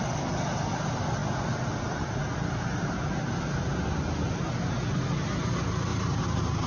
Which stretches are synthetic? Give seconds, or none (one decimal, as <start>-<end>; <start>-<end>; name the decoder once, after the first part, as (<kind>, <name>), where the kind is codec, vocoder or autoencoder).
none